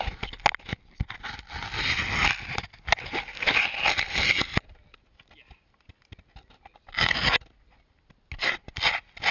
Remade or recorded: recorded